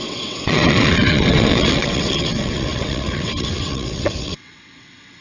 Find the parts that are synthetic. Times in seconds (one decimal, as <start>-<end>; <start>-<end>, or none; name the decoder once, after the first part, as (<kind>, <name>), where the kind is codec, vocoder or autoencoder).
0.0-5.2 (vocoder, WaveNeXt)